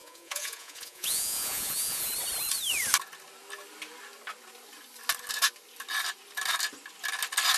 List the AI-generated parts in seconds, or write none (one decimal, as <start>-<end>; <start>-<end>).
0.0-2.1